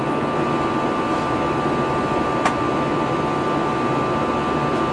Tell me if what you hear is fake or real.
real